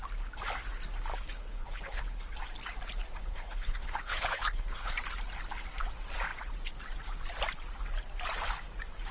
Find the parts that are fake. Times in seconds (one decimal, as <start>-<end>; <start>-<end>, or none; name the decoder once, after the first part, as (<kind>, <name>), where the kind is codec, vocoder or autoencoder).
1.1-2.0 (codec, HILCodec); 3.2-4.9